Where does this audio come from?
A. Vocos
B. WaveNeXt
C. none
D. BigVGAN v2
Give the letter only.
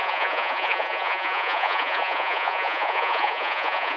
A